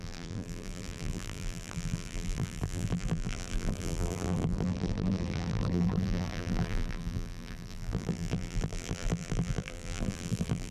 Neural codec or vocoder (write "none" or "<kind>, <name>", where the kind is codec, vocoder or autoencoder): vocoder, BigVGAN v2